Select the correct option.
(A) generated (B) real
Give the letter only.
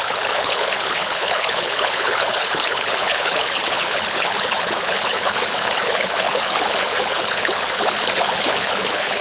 A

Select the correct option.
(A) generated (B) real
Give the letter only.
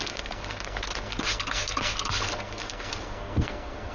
A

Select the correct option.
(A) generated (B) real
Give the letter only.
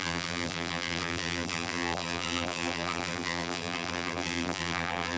A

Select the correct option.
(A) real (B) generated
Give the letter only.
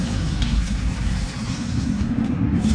B